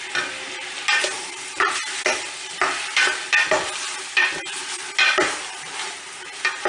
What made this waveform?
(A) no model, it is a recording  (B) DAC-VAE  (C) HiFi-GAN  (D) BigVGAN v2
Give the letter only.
A